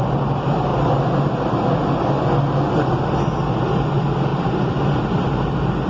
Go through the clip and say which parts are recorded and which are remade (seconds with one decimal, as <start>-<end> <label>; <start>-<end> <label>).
0.0-5.9 recorded